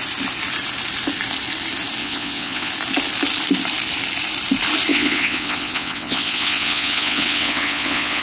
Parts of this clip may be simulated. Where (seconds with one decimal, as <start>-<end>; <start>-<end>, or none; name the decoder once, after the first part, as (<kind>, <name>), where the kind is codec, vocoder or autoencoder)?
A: 2.0-2.7 (vocoder, WaveNeXt); 4.9-8.2